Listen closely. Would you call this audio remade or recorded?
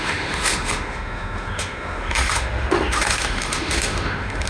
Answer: remade